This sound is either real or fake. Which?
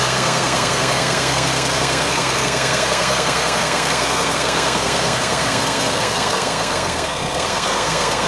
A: fake